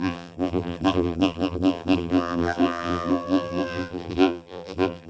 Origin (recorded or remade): remade